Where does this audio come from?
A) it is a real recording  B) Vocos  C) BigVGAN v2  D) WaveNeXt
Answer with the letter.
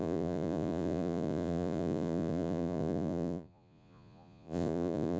B